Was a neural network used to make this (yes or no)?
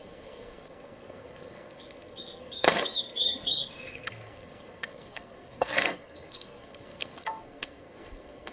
yes